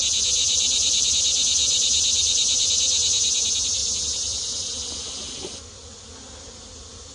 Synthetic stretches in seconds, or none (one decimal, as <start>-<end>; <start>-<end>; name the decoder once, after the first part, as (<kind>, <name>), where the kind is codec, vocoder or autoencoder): 0.4-1.1 (vocoder, BigVGAN v2); 1.6-2.7; 3.8-4.7